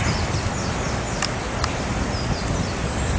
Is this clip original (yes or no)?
yes